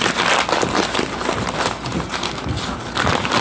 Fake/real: real